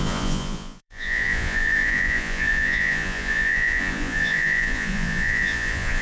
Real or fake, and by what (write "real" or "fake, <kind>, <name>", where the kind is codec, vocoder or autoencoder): fake, vocoder, Vocos